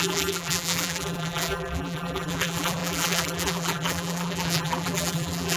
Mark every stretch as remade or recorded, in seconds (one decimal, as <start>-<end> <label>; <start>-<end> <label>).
0.0-5.6 remade